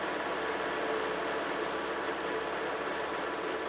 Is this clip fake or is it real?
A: real